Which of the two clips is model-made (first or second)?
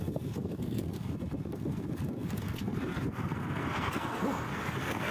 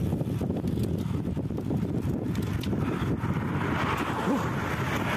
first